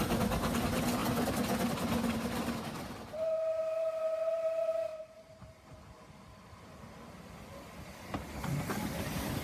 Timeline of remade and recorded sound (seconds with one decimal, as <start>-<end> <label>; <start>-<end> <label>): 0.0-9.4 recorded